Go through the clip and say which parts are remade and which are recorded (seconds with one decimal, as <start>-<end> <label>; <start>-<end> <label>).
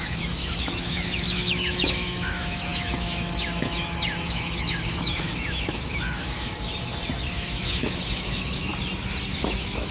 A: 0.0-6.5 remade; 6.5-7.3 recorded; 7.3-8.7 remade; 8.7-9.3 recorded; 9.3-9.9 remade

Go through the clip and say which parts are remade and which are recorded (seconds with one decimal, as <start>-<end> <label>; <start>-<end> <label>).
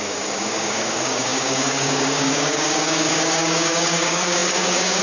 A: 0.0-5.0 remade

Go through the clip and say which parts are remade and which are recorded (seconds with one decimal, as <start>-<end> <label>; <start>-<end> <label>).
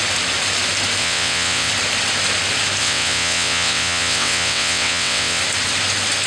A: 0.0-1.0 recorded; 1.0-1.7 remade; 1.7-2.8 recorded; 2.8-5.4 remade; 5.4-6.3 recorded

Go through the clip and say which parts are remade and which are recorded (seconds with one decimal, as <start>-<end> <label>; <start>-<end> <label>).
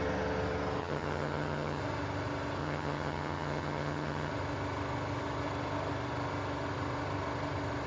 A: 0.0-0.8 recorded; 0.8-1.8 remade; 1.8-2.6 recorded; 2.6-4.3 remade; 4.3-7.9 recorded